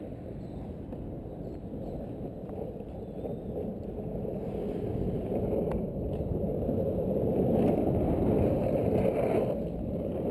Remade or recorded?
recorded